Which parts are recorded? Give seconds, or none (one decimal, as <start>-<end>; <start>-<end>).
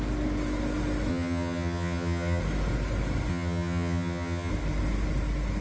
0.0-1.1; 2.4-3.3; 4.5-5.6